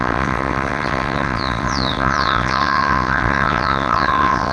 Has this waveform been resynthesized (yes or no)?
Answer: yes